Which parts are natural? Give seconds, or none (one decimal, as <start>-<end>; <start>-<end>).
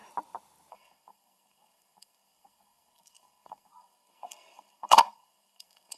0.0-0.7